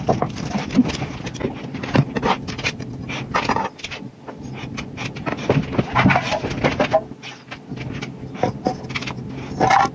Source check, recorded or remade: recorded